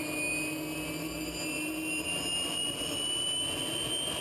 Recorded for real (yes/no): yes